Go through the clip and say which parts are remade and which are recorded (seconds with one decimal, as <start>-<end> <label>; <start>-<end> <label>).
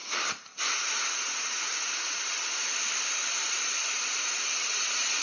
0.0-0.9 remade; 0.9-3.4 recorded; 3.4-4.8 remade; 4.8-5.2 recorded